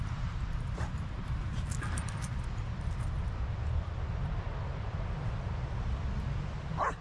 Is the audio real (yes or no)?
no